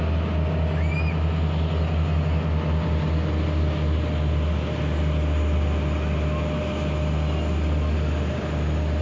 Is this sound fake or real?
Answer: real